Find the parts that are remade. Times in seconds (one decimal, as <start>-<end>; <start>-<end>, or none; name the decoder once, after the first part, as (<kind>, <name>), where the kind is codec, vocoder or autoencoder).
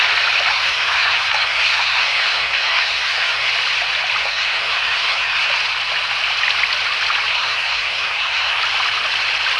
0.5-3.5 (codec, SNAC); 4.2-5.5; 7.3-8.6